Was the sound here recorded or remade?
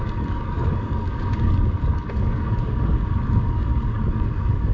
remade